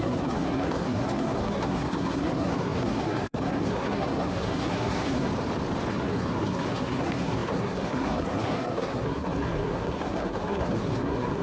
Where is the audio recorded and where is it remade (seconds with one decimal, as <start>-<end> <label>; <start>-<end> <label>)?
0.0-5.3 remade; 5.3-5.9 recorded; 5.9-11.4 remade